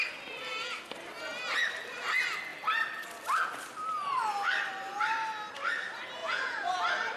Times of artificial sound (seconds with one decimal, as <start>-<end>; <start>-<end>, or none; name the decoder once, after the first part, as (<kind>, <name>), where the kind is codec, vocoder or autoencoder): 6.2-6.8 (vocoder, Vocos)